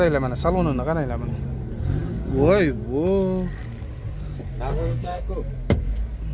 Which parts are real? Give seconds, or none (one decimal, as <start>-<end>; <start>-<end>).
0.0-4.7; 5.3-6.3